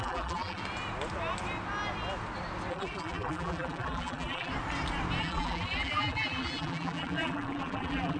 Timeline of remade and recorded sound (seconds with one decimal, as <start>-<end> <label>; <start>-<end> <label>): 0.0-0.6 remade; 0.6-2.7 recorded; 2.7-4.5 remade; 4.5-5.2 recorded; 5.2-8.2 remade